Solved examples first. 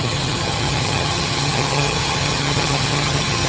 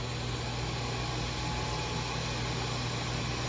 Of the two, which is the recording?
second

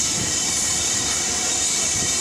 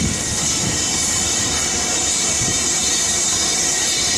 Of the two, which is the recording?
second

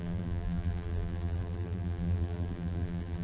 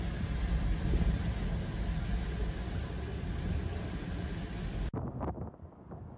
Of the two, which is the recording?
second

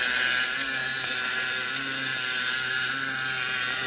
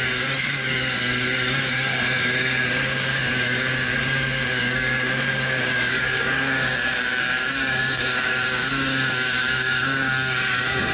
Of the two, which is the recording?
first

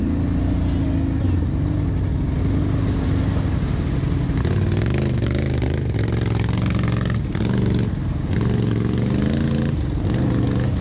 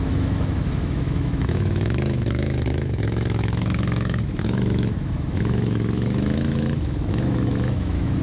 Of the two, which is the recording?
first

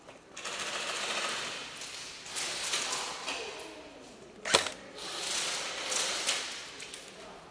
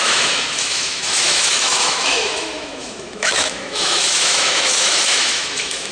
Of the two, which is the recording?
first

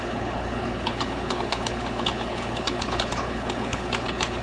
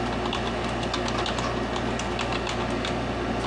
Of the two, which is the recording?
second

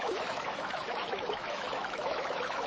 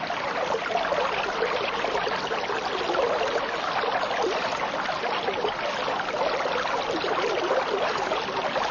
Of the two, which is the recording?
second